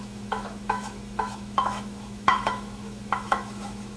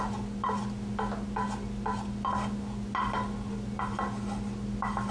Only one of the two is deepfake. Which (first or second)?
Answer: first